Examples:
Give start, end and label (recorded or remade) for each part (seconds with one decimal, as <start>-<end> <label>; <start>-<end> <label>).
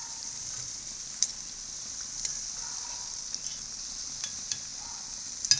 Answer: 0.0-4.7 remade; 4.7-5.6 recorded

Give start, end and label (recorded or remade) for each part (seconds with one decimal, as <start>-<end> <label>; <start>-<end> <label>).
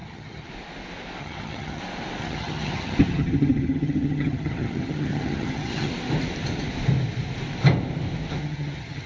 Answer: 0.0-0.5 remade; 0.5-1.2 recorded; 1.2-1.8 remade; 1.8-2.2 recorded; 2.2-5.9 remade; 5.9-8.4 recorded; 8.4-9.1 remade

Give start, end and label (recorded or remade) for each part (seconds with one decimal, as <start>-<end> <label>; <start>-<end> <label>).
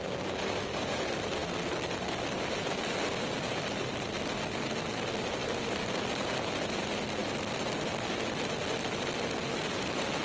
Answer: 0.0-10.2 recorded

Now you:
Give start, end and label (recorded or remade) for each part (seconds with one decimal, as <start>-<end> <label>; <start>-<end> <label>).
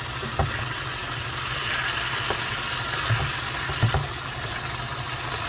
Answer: 0.0-5.5 recorded